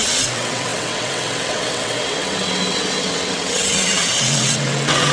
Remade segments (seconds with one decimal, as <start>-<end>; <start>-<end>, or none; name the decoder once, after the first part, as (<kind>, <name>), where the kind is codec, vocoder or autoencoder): 0.0-5.1 (vocoder, WaveNeXt)